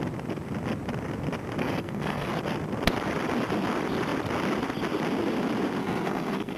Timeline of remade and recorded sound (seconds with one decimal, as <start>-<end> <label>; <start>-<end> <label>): 0.0-1.6 recorded; 1.6-2.3 remade; 2.3-5.8 recorded; 5.8-6.6 remade